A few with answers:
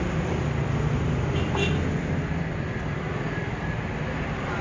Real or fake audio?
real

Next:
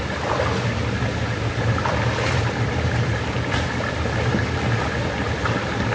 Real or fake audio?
real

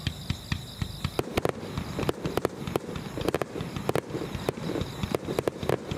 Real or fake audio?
real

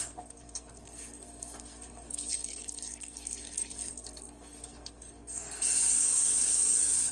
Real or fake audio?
fake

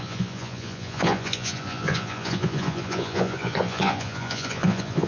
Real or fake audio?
fake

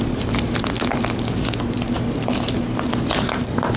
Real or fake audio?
real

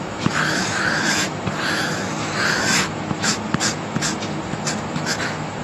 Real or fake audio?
fake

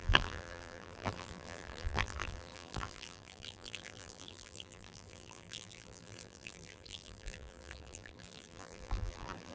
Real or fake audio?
fake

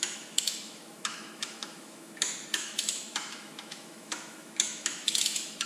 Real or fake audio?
fake